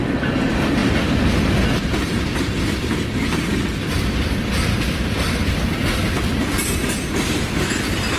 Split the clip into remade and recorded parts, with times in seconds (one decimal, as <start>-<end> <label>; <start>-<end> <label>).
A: 0.0-8.2 recorded